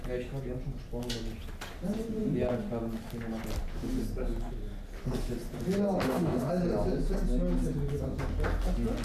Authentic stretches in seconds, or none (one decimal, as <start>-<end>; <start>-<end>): 0.0-6.0; 6.5-9.0

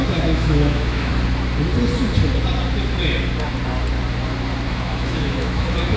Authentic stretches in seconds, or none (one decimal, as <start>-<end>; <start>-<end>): 1.1-4.7

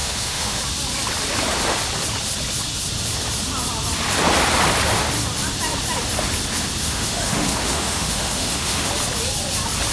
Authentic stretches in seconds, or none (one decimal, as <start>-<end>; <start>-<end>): 0.6-6.8; 8.9-9.9

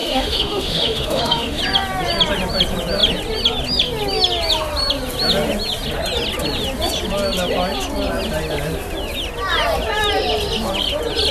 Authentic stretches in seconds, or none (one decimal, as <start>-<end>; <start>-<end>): 1.6-11.3

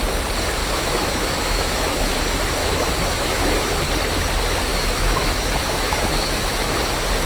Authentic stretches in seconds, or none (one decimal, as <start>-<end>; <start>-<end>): 0.0-0.6; 2.2-2.6; 3.8-4.7; 6.8-7.2

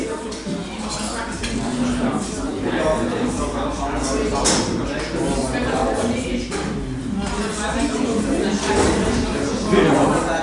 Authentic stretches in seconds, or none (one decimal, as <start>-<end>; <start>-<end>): 0.0-10.4

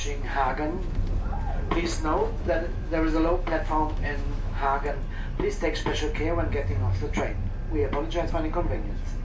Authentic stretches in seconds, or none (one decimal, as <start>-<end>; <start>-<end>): 0.5-2.2; 4.9-6.7; 7.2-9.2

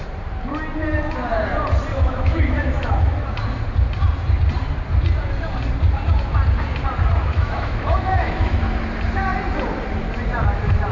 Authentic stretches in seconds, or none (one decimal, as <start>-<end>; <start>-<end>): 0.0-1.9; 3.1-7.3; 8.6-10.9